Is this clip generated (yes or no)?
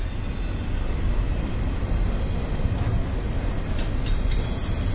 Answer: no